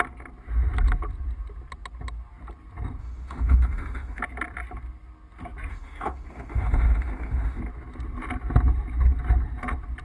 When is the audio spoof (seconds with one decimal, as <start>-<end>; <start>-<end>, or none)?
3.0-4.2; 5.7-7.6